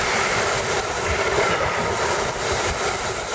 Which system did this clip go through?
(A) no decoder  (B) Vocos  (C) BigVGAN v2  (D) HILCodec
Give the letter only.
C